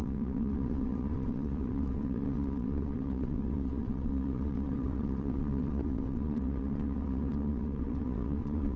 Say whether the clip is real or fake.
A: fake